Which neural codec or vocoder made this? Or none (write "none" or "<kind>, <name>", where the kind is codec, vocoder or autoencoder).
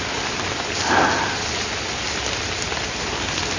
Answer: none